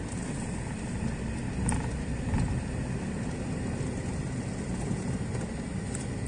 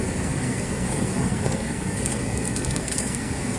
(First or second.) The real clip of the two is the first